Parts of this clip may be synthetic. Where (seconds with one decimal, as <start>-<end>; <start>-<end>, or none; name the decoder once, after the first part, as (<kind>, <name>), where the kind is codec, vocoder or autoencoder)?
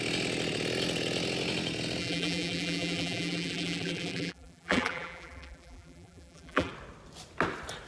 2.0-6.7 (vocoder, BigVGAN v2)